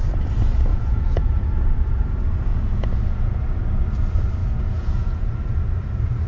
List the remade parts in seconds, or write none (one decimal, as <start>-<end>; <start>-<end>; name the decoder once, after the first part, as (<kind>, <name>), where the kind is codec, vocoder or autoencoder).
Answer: 0.7-1.6 (vocoder, Vocos); 2.5-3.4; 4.4-5.3